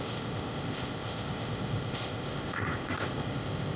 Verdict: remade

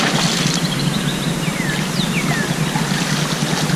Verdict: recorded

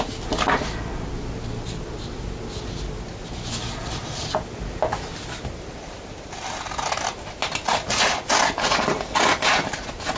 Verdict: recorded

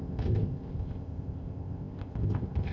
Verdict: remade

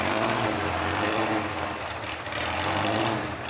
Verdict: recorded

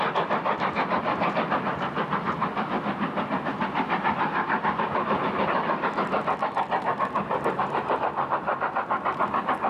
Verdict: recorded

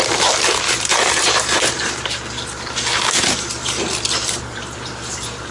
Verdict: remade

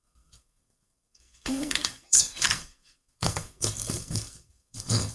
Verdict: remade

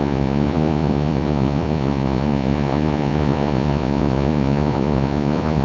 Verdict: remade